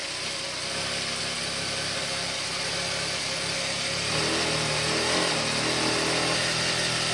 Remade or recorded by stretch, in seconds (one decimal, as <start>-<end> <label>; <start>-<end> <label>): 0.0-7.1 recorded